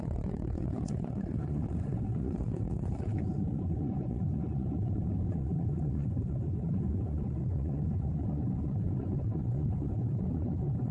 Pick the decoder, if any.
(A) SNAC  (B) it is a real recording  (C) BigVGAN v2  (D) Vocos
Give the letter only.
D